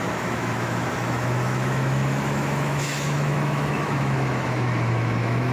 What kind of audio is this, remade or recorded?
remade